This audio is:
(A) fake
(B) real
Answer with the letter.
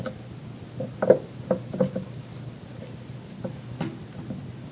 B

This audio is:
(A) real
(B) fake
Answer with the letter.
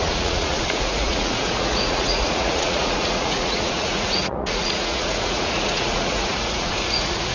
B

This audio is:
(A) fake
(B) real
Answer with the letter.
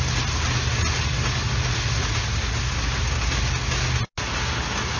B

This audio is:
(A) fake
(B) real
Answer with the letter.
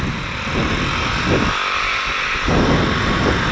B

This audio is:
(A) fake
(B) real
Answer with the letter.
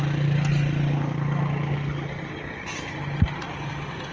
B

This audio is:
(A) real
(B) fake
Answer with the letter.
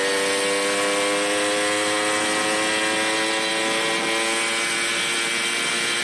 A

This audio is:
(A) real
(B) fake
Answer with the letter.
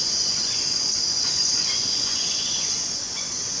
B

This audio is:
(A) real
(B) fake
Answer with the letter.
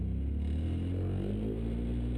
A